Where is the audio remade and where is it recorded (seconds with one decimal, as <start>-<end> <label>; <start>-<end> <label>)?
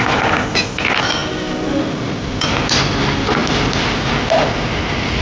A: 0.0-5.2 recorded